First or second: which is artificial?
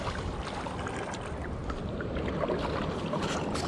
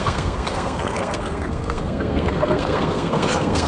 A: second